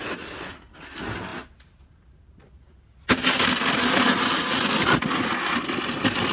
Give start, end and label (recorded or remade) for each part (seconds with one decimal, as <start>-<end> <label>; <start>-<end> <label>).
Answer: 0.0-6.3 recorded